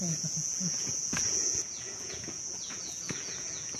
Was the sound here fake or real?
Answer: fake